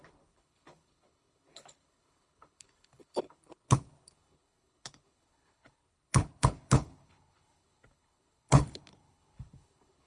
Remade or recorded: remade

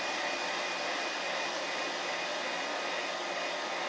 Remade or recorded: recorded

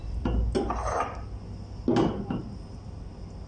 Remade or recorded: recorded